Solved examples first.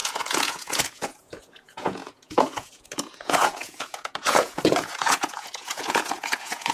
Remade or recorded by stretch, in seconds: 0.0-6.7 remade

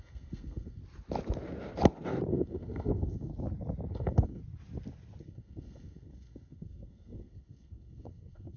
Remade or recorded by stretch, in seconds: 0.0-0.8 remade; 0.8-2.3 recorded; 2.3-3.3 remade; 3.3-3.9 recorded; 3.9-4.4 remade; 4.4-5.2 recorded; 5.2-8.6 remade

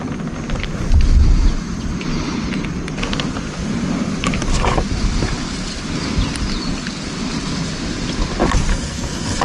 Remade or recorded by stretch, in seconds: 0.0-8.7 recorded; 8.7-9.4 remade